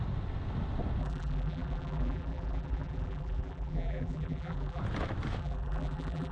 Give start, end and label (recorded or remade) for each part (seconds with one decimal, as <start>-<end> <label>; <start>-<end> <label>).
0.0-1.0 recorded; 1.0-4.8 remade; 4.8-5.4 recorded; 5.4-6.3 remade